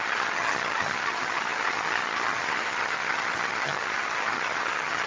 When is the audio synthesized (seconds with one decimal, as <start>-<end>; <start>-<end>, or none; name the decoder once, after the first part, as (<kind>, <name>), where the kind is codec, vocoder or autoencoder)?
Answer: 0.0-5.1 (vocoder, HiFi-GAN)